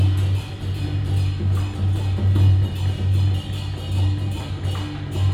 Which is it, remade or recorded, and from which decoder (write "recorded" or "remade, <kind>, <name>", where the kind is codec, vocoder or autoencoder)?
recorded